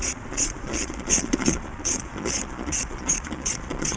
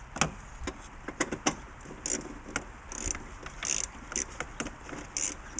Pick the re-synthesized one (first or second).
first